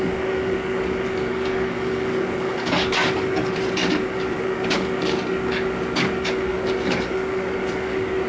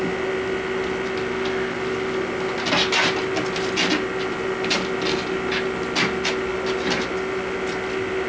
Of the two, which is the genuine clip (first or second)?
second